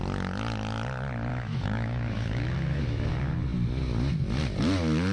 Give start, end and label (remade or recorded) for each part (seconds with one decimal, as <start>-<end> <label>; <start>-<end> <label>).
0.0-1.3 recorded; 1.3-3.1 remade; 3.1-5.1 recorded